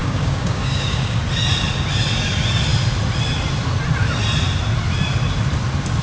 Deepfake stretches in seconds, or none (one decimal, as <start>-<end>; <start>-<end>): 0.0-1.2

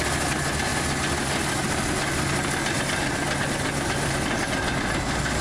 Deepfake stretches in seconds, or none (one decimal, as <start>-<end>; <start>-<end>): none